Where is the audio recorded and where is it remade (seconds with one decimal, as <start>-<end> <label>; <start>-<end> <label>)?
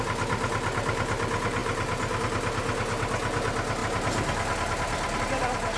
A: 0.0-5.8 recorded